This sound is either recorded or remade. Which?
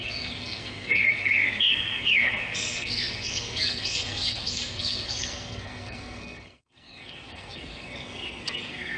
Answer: remade